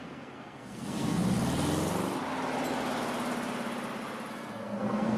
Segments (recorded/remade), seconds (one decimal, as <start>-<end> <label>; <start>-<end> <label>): 0.0-1.2 remade; 1.2-4.3 recorded; 4.3-5.2 remade